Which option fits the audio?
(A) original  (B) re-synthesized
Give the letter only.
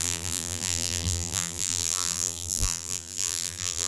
B